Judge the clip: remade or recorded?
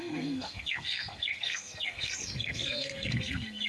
remade